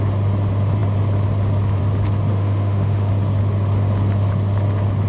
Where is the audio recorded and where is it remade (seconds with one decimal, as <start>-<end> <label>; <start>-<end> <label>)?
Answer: 0.0-2.3 recorded; 2.3-3.1 remade; 3.1-5.1 recorded